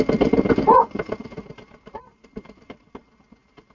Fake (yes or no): no